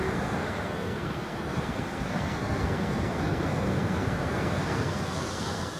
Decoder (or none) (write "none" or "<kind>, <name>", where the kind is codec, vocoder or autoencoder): codec, SNAC